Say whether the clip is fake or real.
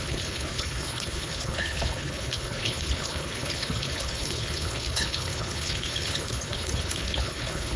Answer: fake